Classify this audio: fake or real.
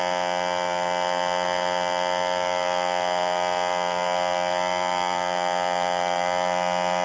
real